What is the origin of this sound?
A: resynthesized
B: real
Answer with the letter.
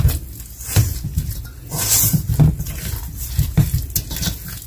B